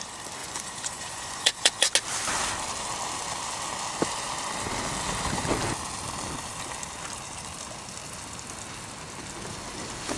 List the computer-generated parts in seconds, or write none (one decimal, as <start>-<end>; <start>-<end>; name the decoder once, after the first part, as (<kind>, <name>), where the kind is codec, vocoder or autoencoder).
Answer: 0.4-1.9 (vocoder, Vocos)